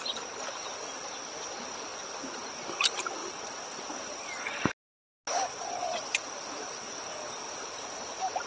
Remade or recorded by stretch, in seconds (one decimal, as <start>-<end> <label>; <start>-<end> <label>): 0.0-8.5 recorded